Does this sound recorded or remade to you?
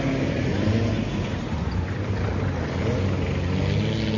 recorded